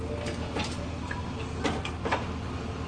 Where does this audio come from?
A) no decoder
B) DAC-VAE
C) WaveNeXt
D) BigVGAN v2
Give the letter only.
A